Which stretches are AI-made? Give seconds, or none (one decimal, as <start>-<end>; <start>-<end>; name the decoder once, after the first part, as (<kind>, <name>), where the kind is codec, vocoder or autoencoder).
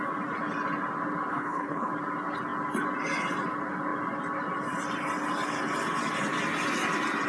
1.3-1.9 (codec, HILCodec)